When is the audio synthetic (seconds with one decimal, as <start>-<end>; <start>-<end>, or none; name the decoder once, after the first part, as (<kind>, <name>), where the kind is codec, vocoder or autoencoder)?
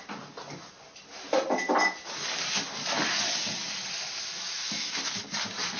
4.3-5.2 (autoencoder, DAC-VAE)